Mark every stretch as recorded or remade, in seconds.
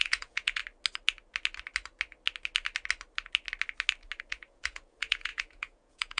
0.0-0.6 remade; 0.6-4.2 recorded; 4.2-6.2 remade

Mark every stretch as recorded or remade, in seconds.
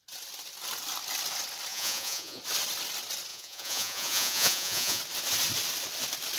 0.0-1.7 recorded; 1.7-2.4 remade; 2.4-3.3 recorded; 3.3-5.0 remade; 5.0-6.4 recorded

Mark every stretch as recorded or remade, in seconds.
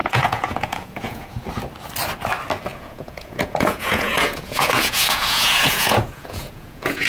0.0-1.4 remade; 1.4-2.7 recorded; 2.7-7.1 remade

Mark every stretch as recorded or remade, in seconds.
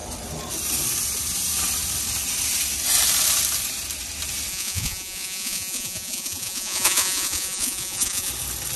0.0-4.5 recorded; 4.5-8.3 remade; 8.3-8.8 recorded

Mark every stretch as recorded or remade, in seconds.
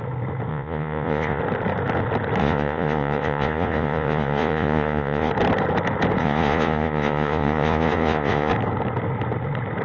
0.0-0.5 recorded; 0.5-1.4 remade; 1.4-2.4 recorded; 2.4-5.3 remade; 5.3-6.2 recorded; 6.2-8.5 remade; 8.5-9.8 recorded